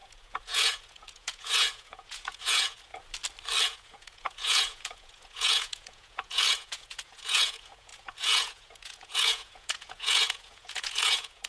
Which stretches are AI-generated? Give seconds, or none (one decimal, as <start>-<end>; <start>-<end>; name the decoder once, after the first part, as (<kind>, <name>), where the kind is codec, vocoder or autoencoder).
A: 0.0-2.9 (vocoder, Vocos); 3.6-11.5